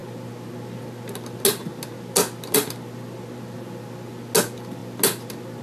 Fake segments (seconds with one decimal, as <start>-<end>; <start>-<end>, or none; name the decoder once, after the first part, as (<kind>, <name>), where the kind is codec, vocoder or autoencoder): none